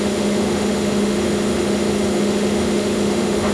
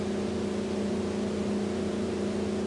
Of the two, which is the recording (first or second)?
second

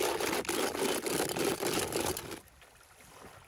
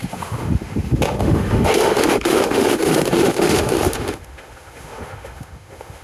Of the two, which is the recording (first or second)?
first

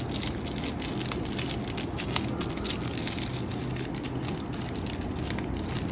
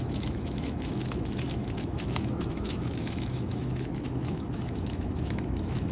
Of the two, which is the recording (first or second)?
first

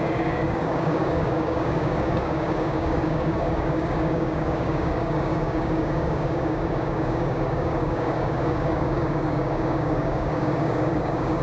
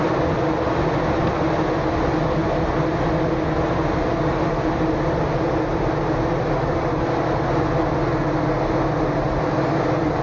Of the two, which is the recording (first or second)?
second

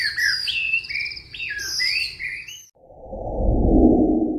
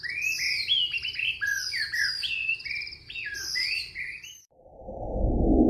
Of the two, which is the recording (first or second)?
first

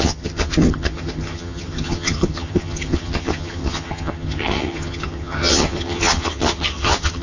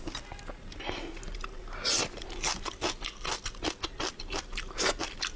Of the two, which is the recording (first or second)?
second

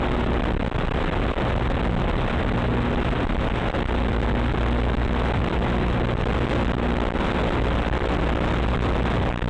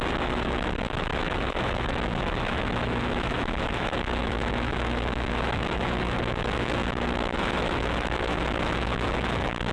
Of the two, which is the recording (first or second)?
first